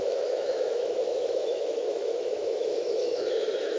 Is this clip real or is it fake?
fake